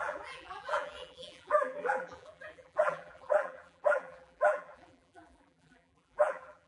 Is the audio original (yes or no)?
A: no